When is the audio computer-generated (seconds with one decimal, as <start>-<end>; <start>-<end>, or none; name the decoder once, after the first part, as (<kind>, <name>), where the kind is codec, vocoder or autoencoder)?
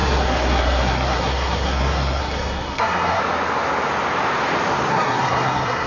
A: 0.0-3.2 (codec, SNAC); 4.9-5.9